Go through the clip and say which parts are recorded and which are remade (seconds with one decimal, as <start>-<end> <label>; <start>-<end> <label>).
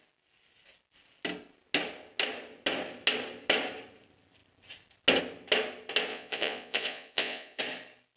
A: 0.0-6.1 recorded; 6.1-7.6 remade; 7.6-8.2 recorded